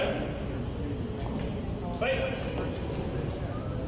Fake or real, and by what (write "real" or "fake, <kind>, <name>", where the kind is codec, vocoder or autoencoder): real